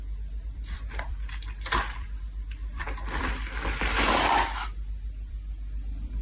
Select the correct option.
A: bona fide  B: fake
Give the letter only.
B